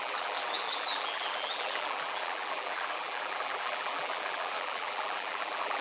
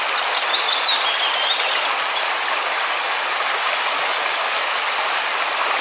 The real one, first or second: second